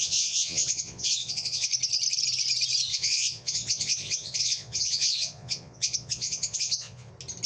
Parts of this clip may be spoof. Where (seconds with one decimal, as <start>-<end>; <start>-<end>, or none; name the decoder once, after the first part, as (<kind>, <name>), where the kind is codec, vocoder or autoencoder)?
0.0-1.7 (vocoder, Vocos); 2.9-7.1

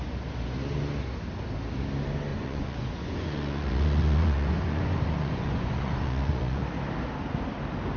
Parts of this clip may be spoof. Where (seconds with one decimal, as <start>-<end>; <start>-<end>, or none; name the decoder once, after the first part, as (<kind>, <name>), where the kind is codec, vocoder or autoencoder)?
2.3-6.6 (vocoder, Vocos)